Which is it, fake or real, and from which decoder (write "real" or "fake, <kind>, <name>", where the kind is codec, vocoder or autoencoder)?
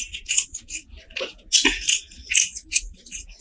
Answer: real